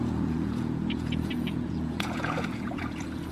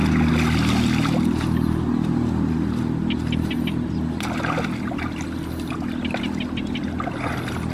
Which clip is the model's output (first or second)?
first